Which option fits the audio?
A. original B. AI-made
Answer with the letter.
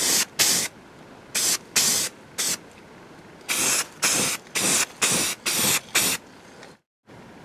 A